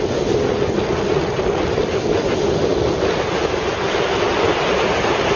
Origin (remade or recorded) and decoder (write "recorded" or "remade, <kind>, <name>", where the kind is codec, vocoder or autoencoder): recorded